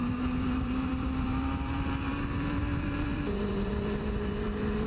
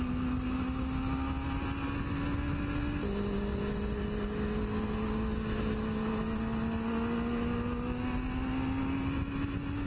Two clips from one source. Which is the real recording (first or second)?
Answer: second